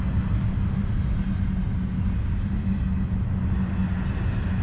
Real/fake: real